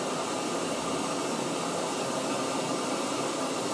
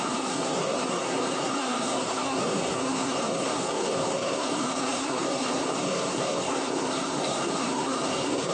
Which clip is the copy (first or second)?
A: second